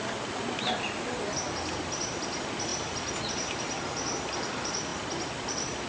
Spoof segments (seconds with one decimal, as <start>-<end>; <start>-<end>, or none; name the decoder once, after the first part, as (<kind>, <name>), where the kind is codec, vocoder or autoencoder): none